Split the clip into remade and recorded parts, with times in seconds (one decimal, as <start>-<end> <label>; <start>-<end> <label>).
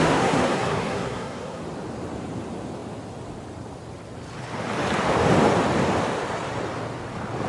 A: 0.0-1.6 remade; 1.6-7.5 recorded